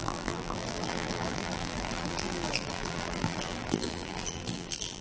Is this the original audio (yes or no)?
no